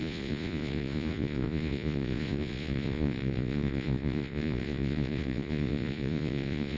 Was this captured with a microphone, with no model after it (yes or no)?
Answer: no